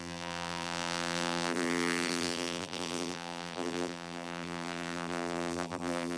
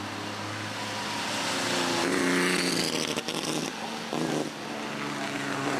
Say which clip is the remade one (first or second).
first